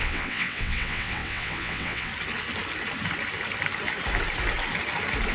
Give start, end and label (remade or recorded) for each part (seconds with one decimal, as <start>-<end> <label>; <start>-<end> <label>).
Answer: 0.0-2.1 remade; 2.1-5.3 recorded